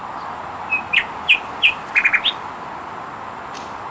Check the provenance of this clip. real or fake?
real